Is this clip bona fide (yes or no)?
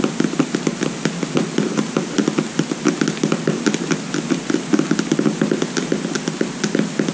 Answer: yes